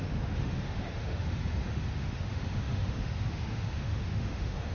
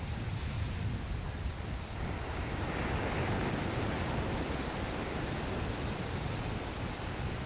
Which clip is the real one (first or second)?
second